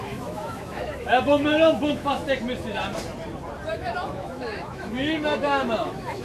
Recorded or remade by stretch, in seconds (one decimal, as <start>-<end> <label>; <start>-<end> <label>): 0.0-2.2 remade; 2.2-3.7 recorded; 3.7-6.2 remade